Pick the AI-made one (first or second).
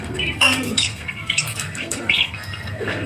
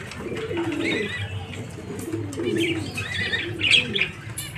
first